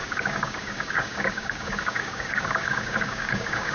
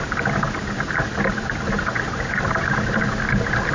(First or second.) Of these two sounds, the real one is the second